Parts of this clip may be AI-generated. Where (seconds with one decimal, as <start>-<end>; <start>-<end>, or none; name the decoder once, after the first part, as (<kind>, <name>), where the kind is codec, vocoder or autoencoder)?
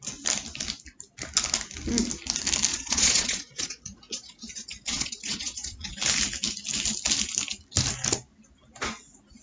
2.7-6.0 (vocoder, Vocos)